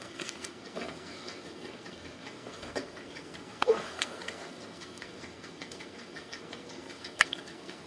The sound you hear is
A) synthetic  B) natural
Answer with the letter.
A